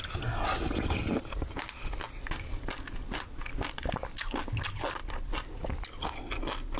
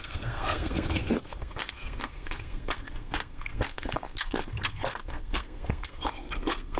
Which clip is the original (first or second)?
first